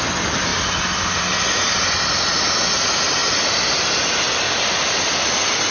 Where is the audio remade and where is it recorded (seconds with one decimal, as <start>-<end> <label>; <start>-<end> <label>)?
0.0-5.7 recorded